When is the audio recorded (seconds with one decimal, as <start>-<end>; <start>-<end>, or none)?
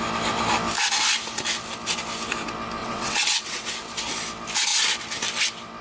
0.0-2.8; 3.7-5.8